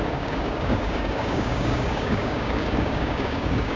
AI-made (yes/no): yes